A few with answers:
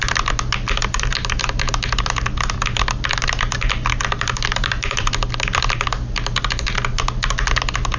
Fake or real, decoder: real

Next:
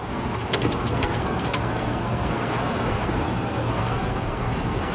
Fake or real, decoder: fake, codec, SNAC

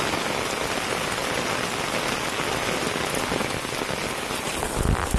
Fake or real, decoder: real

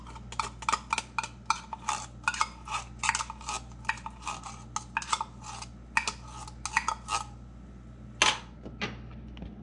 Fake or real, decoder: real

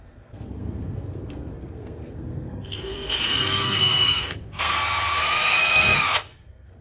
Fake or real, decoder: fake, codec, SNAC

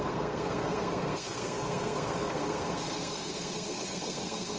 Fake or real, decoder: fake, codec, SNAC